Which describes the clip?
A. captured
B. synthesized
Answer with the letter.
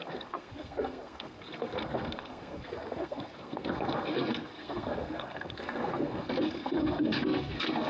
B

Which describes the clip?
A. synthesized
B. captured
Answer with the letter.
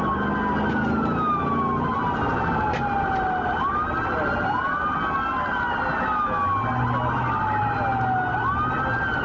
B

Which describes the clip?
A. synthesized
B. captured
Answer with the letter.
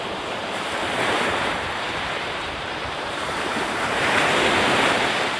A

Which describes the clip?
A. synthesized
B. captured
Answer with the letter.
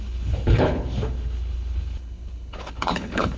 A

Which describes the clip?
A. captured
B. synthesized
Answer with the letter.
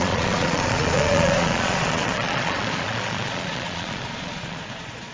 B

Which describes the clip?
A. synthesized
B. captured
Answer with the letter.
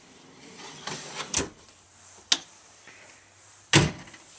B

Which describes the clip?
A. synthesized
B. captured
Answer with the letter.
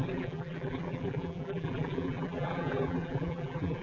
A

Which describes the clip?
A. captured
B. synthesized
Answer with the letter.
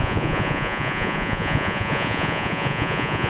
B